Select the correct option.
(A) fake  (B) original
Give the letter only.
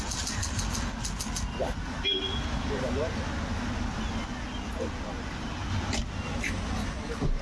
B